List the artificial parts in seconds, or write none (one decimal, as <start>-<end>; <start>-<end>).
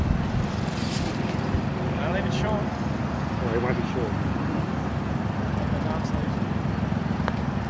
none